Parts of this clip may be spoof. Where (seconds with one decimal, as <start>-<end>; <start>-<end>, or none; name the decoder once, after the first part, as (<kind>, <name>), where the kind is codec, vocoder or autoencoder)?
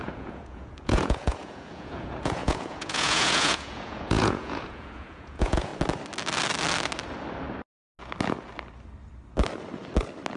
0.0-5.7 (vocoder, Vocos)